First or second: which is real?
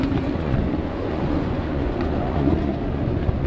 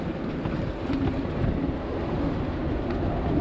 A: second